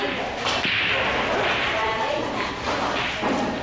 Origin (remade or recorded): recorded